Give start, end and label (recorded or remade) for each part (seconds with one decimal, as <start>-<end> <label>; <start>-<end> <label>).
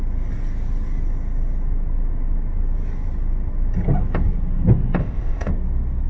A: 0.0-5.0 recorded; 5.0-5.5 remade; 5.5-6.1 recorded